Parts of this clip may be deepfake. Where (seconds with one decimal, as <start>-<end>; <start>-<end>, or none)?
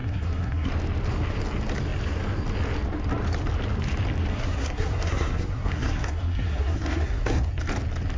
0.0-0.7; 4.3-7.5